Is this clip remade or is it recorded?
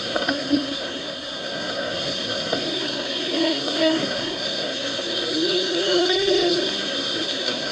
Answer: remade